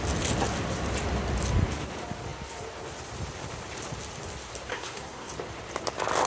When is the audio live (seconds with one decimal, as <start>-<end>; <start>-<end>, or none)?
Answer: 0.0-4.7; 5.3-6.3